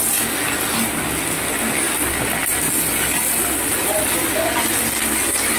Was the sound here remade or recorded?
recorded